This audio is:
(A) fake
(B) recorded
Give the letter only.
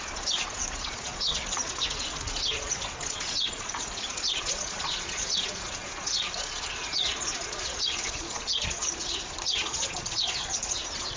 A